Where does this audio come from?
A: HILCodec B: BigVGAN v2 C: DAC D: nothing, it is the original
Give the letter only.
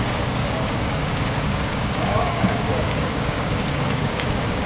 C